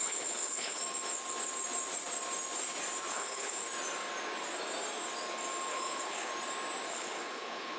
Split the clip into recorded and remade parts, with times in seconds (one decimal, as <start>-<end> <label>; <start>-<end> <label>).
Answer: 0.0-0.8 remade; 0.8-3.1 recorded; 3.1-3.6 remade; 3.6-5.7 recorded; 5.7-6.3 remade; 6.3-6.9 recorded; 6.9-7.8 remade